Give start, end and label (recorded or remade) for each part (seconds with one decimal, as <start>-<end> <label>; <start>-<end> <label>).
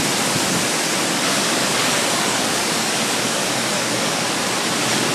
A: 0.0-1.4 recorded; 1.4-4.5 remade; 4.5-5.1 recorded